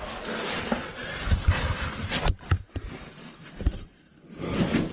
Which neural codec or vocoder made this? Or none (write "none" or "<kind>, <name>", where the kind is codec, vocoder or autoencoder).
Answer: none